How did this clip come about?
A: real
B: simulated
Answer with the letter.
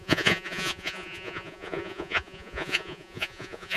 B